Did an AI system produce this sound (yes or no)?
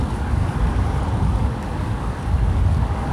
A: yes